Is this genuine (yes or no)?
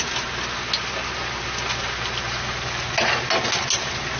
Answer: yes